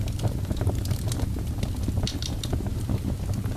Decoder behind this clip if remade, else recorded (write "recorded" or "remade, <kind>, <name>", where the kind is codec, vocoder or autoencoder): recorded